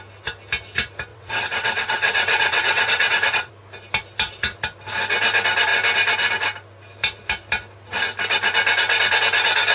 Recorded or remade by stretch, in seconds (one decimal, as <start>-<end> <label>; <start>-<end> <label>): 0.0-1.1 recorded; 1.1-3.5 remade; 3.5-9.7 recorded